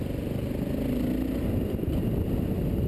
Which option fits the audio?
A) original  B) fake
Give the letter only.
A